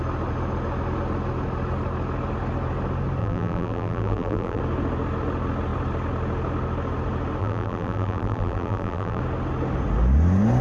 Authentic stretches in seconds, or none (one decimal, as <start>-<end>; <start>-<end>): 0.0-3.2; 4.6-7.4; 9.2-10.6